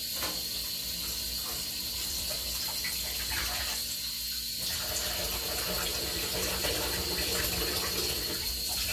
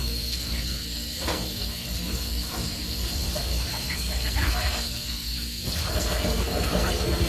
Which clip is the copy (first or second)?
second